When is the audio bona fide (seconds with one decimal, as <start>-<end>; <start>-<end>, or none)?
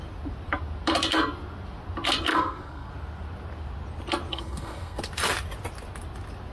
0.0-2.3; 2.9-4.3; 5.0-6.5